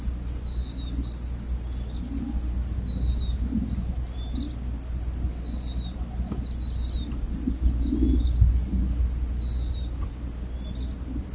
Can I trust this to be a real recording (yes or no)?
yes